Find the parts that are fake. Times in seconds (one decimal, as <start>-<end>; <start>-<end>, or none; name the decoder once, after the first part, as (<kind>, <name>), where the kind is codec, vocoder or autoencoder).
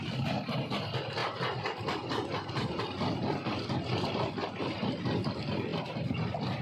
1.2-5.2 (vocoder, BigVGAN v2); 5.7-6.6